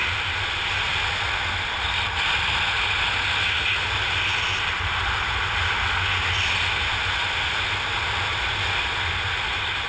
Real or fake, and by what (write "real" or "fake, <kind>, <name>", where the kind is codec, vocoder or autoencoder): real